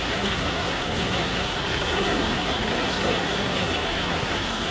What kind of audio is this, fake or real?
fake